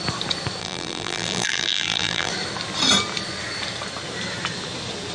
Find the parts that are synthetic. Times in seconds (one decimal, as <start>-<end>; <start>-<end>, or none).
0.6-2.3

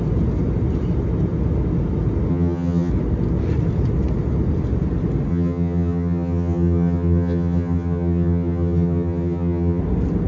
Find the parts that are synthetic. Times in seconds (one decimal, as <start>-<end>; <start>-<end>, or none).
2.3-2.9; 5.3-9.8

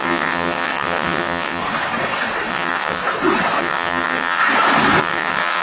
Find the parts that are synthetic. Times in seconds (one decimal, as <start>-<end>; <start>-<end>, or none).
0.0-1.6; 2.5-3.0; 3.6-4.4; 5.0-5.6

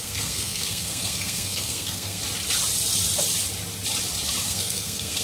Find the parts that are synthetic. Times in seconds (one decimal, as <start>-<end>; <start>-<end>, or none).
0.0-2.2; 4.4-5.2

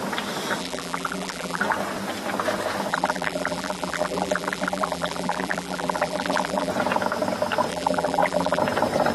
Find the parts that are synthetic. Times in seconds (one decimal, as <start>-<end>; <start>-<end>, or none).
0.6-1.6; 2.9-6.7; 7.7-8.6

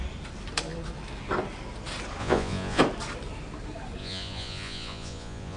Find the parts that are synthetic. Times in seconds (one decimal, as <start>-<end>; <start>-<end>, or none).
2.2-2.8; 4.0-5.6